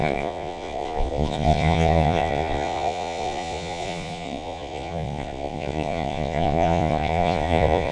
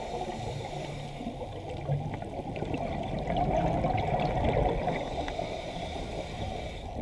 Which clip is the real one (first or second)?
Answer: second